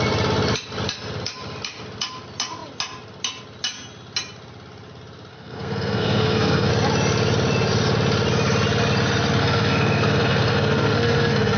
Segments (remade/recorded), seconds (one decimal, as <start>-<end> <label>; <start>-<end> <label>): 0.0-5.3 recorded; 5.3-6.7 remade; 6.7-9.4 recorded; 9.4-11.6 remade